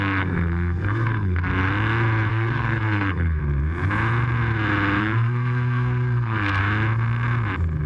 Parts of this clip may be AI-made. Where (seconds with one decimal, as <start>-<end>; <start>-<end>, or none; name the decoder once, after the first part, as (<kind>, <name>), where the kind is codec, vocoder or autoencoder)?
0.0-1.5 (codec, SNAC); 2.3-3.4; 5.0-6.6